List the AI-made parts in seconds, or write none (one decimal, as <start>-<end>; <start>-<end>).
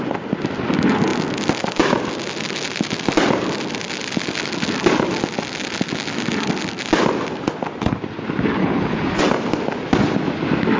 8.6-9.2